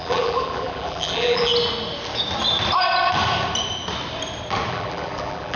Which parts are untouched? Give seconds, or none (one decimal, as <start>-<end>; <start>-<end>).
1.5-4.7